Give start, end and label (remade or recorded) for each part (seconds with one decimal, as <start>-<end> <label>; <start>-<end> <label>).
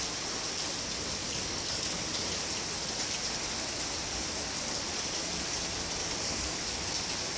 0.0-1.2 recorded; 1.2-2.0 remade; 2.0-6.0 recorded; 6.0-6.8 remade; 6.8-7.4 recorded